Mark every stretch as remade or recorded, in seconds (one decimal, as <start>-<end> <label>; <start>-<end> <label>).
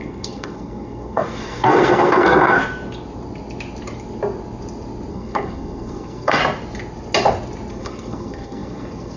0.0-2.6 remade; 2.6-5.1 recorded; 5.1-6.4 remade; 6.4-7.7 recorded; 7.7-9.2 remade